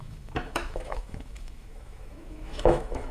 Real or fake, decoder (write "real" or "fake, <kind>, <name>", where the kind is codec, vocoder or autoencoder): fake, autoencoder, DAC-VAE